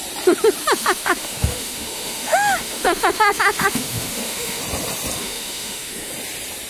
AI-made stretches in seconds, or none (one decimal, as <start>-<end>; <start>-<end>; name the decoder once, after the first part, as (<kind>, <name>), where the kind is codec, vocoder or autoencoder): 0.6-4.6 (autoencoder, DAC-VAE); 5.2-6.1